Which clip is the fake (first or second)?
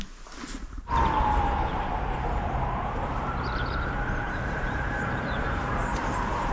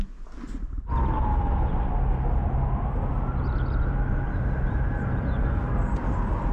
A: first